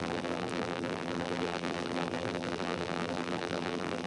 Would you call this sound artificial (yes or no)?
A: yes